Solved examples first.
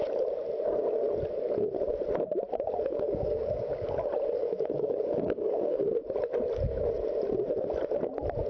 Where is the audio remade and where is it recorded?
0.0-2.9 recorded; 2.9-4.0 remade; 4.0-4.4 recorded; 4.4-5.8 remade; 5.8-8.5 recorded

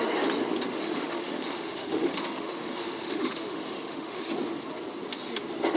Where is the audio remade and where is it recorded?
0.0-0.8 recorded; 0.8-4.3 remade; 4.3-5.8 recorded

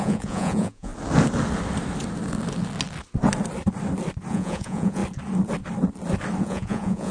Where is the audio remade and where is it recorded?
0.0-0.9 remade; 0.9-4.3 recorded; 4.3-5.0 remade; 5.0-6.4 recorded; 6.4-7.1 remade